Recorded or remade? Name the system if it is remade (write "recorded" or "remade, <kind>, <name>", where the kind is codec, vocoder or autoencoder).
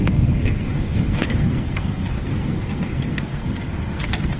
remade, codec, SNAC